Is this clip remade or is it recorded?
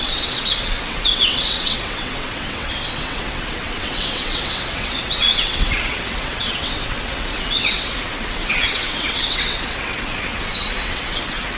remade